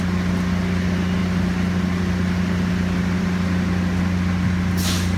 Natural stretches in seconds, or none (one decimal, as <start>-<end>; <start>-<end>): 0.0-5.2

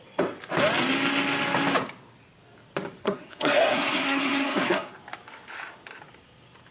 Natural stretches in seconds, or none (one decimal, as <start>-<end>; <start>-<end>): 0.0-3.0; 4.9-6.7